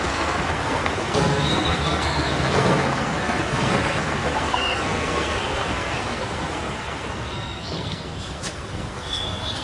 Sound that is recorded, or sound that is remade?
remade